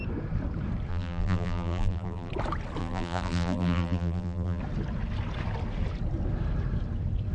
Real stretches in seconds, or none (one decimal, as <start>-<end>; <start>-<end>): 0.0-0.9; 2.3-2.8; 4.6-7.3